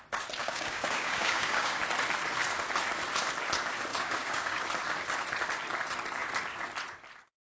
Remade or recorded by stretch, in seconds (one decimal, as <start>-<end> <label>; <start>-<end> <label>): 0.0-0.4 recorded; 0.4-1.8 remade; 1.8-3.9 recorded; 3.9-4.6 remade; 4.6-7.6 recorded